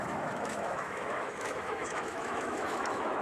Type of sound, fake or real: fake